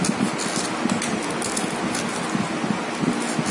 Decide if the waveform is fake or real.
real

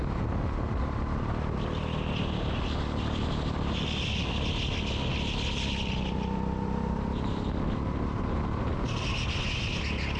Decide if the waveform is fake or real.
real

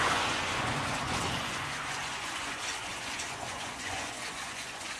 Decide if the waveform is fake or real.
fake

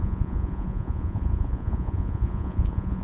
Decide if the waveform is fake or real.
fake